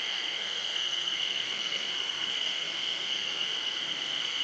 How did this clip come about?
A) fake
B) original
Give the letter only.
A